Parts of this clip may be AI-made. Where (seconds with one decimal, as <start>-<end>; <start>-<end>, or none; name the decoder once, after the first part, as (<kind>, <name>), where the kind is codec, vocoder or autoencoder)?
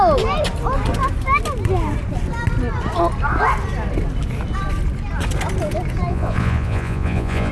6.1-7.5 (vocoder, Vocos)